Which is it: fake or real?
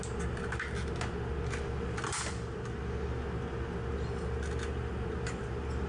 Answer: real